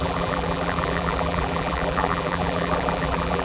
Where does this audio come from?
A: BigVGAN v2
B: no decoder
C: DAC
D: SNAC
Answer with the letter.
A